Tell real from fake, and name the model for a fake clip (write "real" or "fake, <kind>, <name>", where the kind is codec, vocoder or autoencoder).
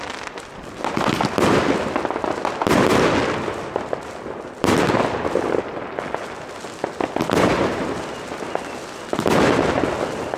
real